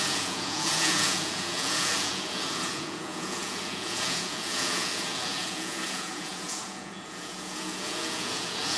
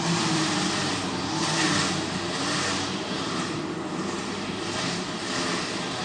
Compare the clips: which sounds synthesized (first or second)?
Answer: first